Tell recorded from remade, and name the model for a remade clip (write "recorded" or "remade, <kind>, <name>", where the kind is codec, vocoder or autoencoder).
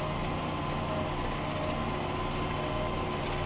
recorded